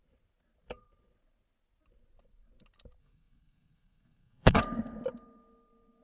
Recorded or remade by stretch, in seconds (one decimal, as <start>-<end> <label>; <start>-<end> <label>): 0.0-3.0 recorded; 3.0-4.6 remade; 4.6-6.0 recorded

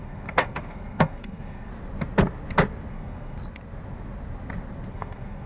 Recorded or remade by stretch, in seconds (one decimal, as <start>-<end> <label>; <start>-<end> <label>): 0.0-1.7 remade; 1.7-2.9 recorded; 2.9-3.4 remade; 3.4-4.9 recorded; 4.9-5.5 remade